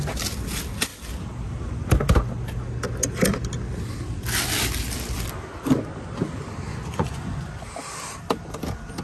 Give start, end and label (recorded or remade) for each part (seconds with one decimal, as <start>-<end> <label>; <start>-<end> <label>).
0.0-6.7 recorded; 6.7-7.6 remade; 7.6-9.0 recorded

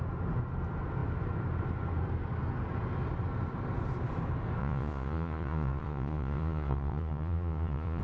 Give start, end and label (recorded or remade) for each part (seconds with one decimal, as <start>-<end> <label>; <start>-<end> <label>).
0.0-4.6 recorded; 4.6-8.0 remade

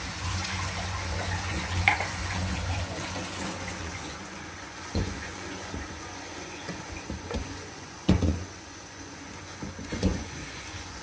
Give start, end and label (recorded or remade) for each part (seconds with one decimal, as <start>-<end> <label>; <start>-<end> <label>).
0.0-11.0 remade

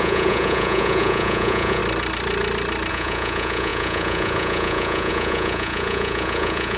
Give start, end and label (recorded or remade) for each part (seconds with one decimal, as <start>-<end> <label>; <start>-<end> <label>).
0.0-1.8 remade; 1.8-2.9 recorded; 2.9-6.8 remade

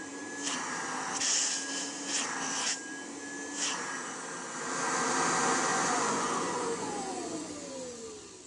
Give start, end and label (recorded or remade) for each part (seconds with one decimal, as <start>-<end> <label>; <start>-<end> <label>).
0.0-5.7 recorded; 5.7-7.5 remade; 7.5-8.5 recorded

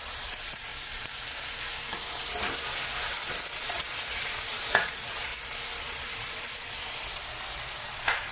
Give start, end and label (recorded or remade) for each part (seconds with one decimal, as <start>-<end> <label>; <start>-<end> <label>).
0.0-0.7 remade; 0.7-3.1 recorded; 3.1-5.3 remade; 5.3-5.8 recorded; 5.8-7.2 remade; 7.2-7.8 recorded; 7.8-8.3 remade

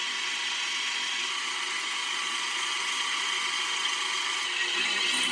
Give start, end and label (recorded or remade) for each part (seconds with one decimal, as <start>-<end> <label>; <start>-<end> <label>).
0.0-2.0 recorded; 2.0-2.7 remade; 2.7-5.3 recorded